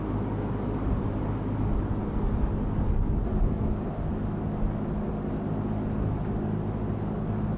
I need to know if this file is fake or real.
real